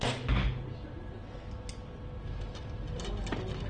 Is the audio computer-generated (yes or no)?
no